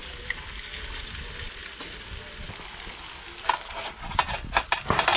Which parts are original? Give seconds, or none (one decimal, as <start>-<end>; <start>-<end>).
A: 0.0-5.2

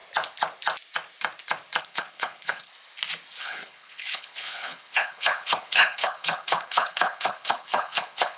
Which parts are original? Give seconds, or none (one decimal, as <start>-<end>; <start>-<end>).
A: 0.0-1.8; 2.7-3.4

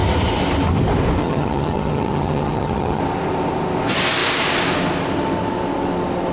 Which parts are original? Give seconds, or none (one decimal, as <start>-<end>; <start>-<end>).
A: 0.0-1.2; 3.0-6.3

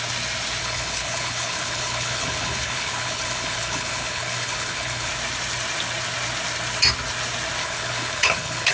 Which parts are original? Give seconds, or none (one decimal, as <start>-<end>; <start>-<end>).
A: 0.0-0.6; 5.1-7.6

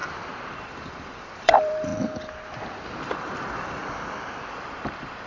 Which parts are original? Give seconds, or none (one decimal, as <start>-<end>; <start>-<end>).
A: 0.0-0.5; 1.9-3.0; 3.8-4.5

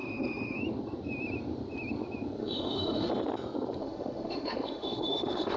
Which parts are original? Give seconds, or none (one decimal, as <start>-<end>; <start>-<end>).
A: 0.6-2.4; 3.1-3.8

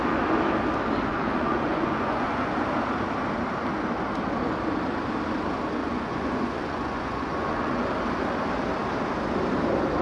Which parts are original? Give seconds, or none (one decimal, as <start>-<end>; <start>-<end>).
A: 0.0-1.1; 2.6-5.8; 7.9-10.0

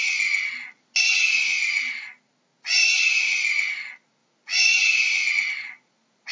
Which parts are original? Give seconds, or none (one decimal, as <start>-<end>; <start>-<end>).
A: 0.0-6.3